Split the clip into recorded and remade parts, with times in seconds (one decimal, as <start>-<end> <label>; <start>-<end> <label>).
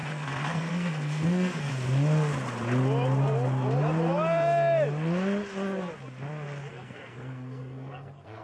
0.0-1.7 remade; 1.7-6.7 recorded; 6.7-8.4 remade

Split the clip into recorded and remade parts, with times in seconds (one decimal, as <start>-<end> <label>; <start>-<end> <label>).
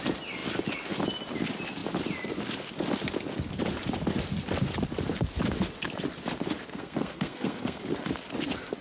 0.0-6.7 recorded; 6.7-7.8 remade; 7.8-8.8 recorded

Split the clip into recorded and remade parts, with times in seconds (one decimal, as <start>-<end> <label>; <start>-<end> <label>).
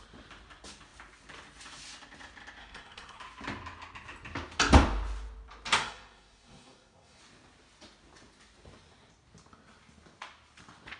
0.0-2.6 recorded; 2.6-3.2 remade; 3.2-5.8 recorded; 5.8-7.2 remade; 7.2-11.0 recorded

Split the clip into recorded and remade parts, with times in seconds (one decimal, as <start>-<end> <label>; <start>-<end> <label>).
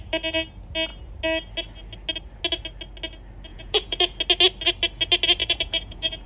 0.0-3.5 recorded; 3.5-4.2 remade; 4.2-5.4 recorded; 5.4-6.3 remade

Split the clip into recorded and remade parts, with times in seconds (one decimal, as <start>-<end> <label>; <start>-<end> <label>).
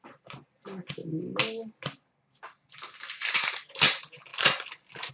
0.0-5.1 recorded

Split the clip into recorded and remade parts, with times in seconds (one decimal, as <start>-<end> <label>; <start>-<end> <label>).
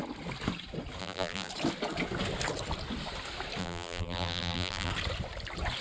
0.0-1.0 recorded; 1.0-1.5 remade; 1.5-3.6 recorded; 3.6-4.9 remade; 4.9-5.8 recorded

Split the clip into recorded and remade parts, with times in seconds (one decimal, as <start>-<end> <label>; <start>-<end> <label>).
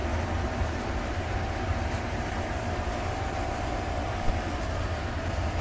0.0-1.1 remade; 1.1-1.7 recorded; 1.7-4.3 remade; 4.3-5.6 recorded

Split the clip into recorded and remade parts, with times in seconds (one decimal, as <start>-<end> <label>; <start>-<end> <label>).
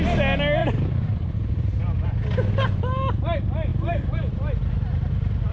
0.0-0.6 recorded; 0.6-1.8 remade; 1.8-3.7 recorded; 3.7-5.5 remade